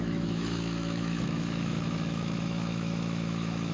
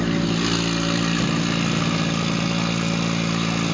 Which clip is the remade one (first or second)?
first